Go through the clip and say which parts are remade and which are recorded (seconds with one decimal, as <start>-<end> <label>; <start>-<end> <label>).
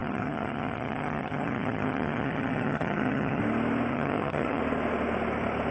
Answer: 0.0-3.4 remade; 3.4-3.9 recorded; 3.9-4.6 remade; 4.6-5.7 recorded